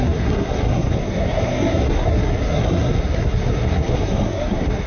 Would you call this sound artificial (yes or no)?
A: yes